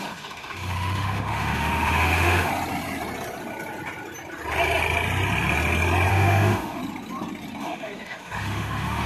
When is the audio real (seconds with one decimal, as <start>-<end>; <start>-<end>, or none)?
2.5-6.1; 6.8-7.6